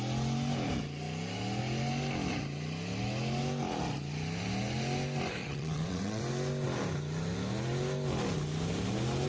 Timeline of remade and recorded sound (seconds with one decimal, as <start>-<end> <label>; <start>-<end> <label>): 0.0-5.4 recorded; 5.4-6.2 remade; 6.2-9.3 recorded